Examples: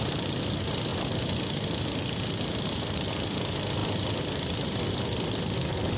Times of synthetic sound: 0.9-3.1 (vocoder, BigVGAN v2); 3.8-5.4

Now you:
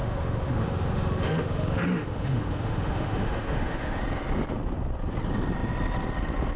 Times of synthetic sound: 0.0-4.0 (autoencoder, DAC-VAE)

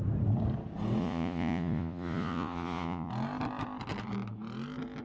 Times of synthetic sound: 1.0-3.1 (vocoder, Vocos)

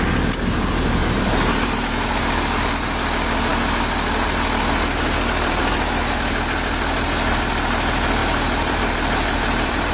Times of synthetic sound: 1.0-2.2 (vocoder, BigVGAN v2); 8.2-9.9

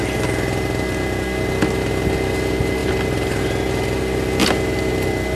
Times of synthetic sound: none

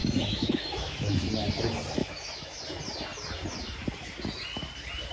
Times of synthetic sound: 0.0-1.3 (autoencoder, DAC-VAE); 2.0-2.6

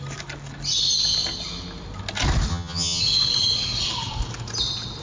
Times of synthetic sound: 2.5-3.0 (vocoder, HiFi-GAN)

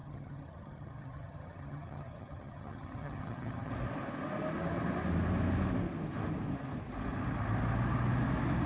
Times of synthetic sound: 0.0-3.7 (vocoder, HiFi-GAN)